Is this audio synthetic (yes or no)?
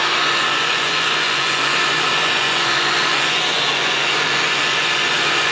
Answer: yes